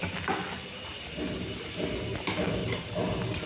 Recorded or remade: recorded